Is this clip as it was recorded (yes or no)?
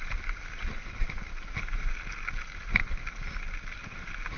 yes